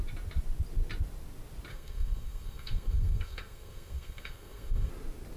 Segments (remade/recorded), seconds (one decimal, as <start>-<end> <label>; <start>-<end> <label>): 0.0-1.7 recorded; 1.7-4.9 remade; 4.9-5.4 recorded